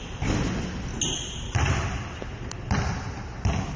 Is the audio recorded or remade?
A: recorded